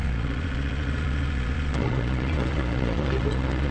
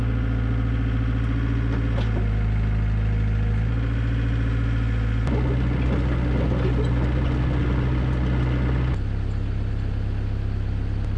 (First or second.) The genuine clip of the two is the second